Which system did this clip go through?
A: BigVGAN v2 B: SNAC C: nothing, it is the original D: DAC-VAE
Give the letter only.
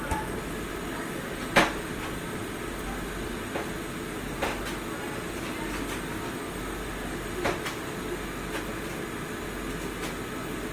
C